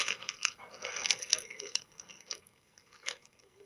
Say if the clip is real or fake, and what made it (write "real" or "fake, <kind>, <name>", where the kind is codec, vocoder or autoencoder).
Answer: fake, codec, SNAC